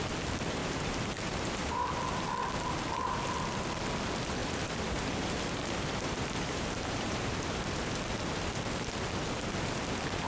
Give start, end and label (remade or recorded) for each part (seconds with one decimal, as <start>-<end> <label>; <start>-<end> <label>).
0.0-0.6 recorded; 0.6-1.9 remade; 1.9-4.4 recorded; 4.4-8.0 remade; 8.0-10.3 recorded